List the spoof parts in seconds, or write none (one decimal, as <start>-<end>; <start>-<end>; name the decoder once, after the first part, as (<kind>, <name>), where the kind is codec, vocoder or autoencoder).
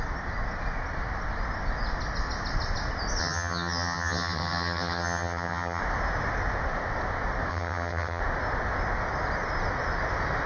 3.2-5.8 (vocoder, HiFi-GAN); 7.5-8.2